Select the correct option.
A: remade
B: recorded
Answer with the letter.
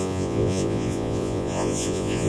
A